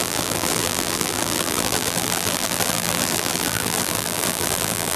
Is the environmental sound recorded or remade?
remade